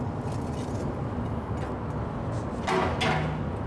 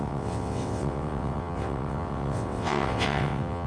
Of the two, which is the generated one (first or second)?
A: second